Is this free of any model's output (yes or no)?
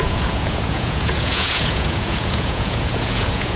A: no